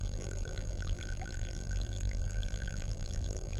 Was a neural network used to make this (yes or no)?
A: yes